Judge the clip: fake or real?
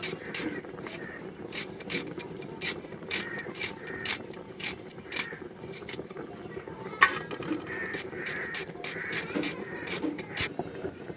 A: fake